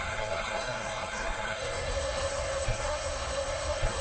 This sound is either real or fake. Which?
fake